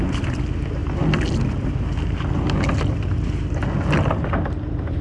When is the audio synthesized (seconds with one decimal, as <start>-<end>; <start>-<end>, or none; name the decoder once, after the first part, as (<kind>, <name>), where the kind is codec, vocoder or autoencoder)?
none